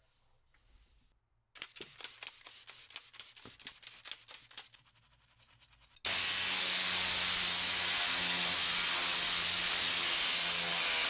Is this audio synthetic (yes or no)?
no